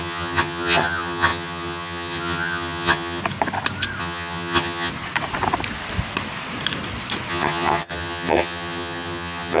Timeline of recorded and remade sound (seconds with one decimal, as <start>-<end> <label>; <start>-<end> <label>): 0.0-3.2 remade; 3.2-4.0 recorded; 4.0-4.9 remade; 4.9-7.3 recorded; 7.3-9.6 remade